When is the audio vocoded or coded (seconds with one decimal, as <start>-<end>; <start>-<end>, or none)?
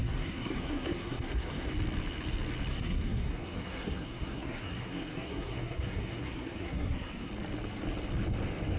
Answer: 0.0-1.7; 2.7-7.3